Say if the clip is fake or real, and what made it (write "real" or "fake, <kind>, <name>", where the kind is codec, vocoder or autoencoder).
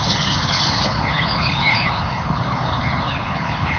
fake, codec, HILCodec